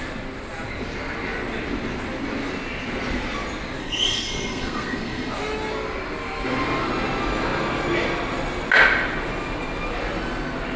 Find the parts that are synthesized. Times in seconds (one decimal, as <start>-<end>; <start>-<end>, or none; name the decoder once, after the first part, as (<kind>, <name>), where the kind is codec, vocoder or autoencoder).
3.8-5.3 (codec, SNAC)